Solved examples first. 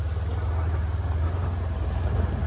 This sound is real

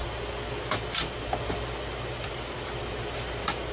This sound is real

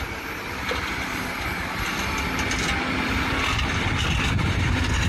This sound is real